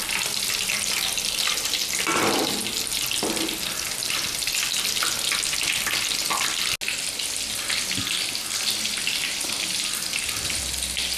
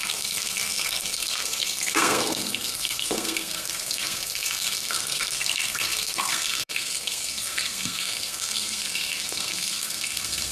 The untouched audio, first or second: first